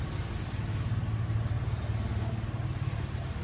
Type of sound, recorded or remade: recorded